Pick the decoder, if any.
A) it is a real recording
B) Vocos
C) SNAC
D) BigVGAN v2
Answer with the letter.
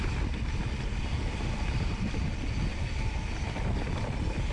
A